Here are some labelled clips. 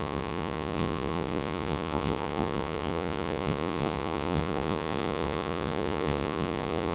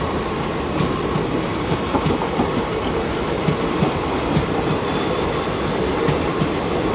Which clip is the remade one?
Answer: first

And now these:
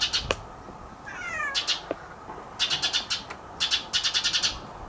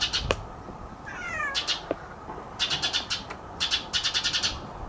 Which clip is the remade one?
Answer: second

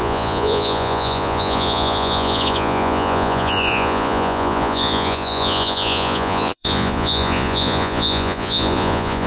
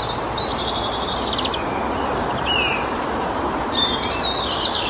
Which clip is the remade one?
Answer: first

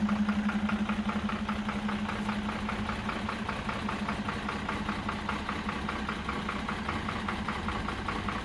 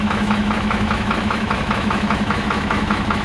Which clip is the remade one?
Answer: second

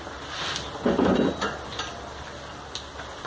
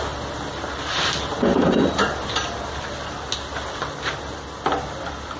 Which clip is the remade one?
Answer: second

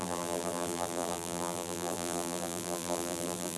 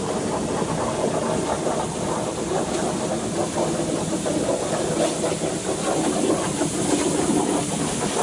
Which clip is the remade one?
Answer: first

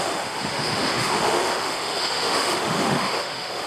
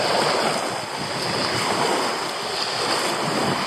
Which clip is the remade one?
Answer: first